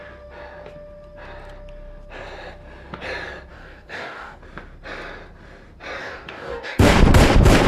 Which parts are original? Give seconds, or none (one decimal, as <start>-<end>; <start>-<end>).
0.0-3.5; 4.4-6.0; 7.0-7.7